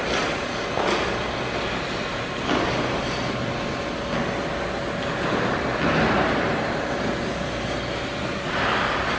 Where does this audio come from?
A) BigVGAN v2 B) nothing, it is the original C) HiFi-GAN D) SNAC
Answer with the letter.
B